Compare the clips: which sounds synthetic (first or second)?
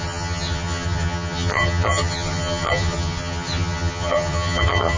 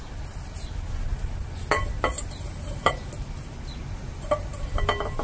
first